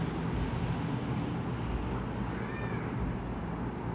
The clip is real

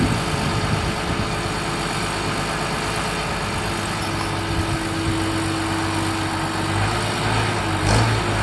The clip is real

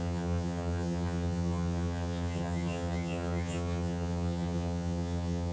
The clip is fake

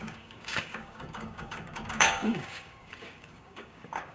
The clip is fake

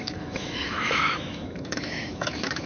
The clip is fake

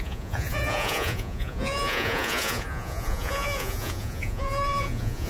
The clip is fake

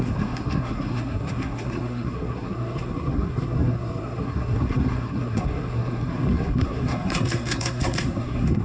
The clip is fake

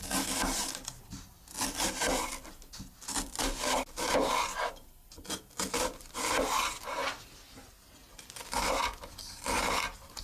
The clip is real